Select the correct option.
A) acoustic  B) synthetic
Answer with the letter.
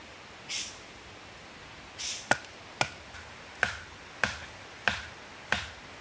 A